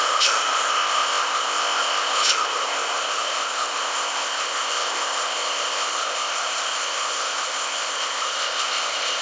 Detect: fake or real fake